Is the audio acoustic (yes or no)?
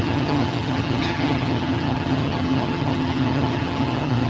no